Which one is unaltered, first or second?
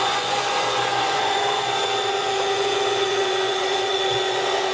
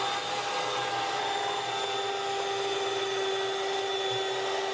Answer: second